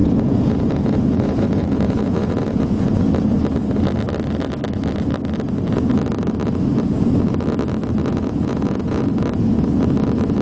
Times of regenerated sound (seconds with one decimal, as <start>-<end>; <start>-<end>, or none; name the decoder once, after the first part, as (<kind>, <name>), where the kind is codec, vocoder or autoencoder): 0.0-3.0 (vocoder, Vocos); 8.0-9.0